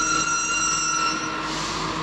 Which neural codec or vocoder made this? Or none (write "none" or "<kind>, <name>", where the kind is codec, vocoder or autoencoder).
none